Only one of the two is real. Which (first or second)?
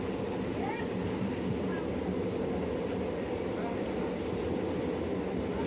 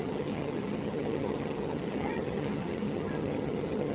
first